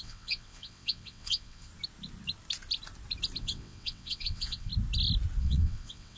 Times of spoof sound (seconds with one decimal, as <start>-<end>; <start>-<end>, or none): 0.0-1.7; 3.4-4.7; 5.4-6.2